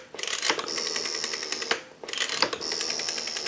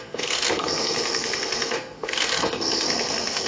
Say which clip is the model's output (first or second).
second